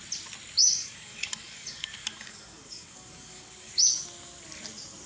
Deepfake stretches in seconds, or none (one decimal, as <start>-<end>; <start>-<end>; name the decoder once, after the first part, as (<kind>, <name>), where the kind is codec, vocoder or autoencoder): 0.6-3.7 (codec, DAC)